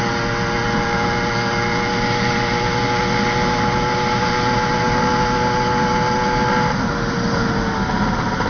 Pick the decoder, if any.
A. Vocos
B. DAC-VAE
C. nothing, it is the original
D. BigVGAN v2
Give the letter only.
C